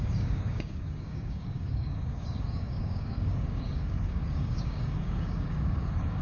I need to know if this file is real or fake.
fake